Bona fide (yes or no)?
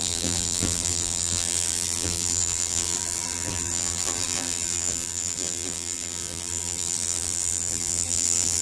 no